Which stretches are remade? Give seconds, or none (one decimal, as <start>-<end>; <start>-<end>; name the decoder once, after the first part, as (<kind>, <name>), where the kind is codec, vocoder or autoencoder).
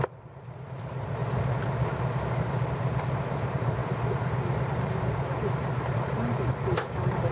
0.0-1.2 (vocoder, BigVGAN v2); 2.3-3.8; 4.7-7.3